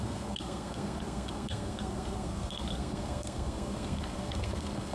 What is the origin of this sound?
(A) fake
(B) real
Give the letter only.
A